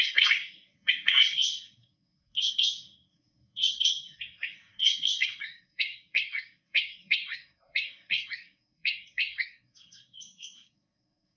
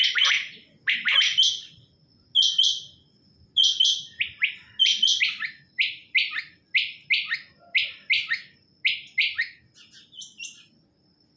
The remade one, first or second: first